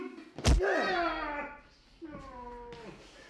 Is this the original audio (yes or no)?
yes